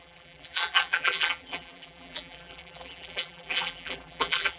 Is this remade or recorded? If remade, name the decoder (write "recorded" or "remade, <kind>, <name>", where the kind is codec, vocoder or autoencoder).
remade, vocoder, BigVGAN v2